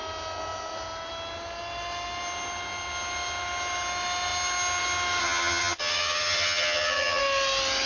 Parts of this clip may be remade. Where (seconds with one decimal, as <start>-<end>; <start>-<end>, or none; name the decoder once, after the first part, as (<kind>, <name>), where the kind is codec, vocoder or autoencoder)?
5.2-7.2 (vocoder, HiFi-GAN)